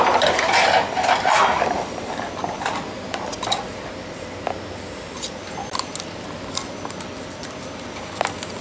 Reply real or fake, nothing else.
real